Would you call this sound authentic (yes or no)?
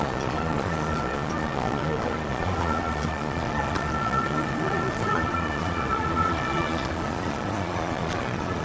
no